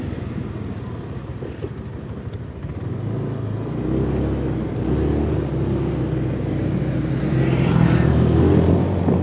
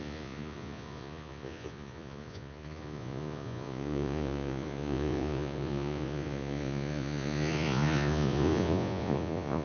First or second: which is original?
first